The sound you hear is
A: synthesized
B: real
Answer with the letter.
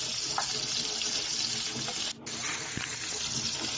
B